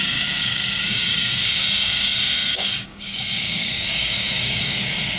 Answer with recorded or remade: remade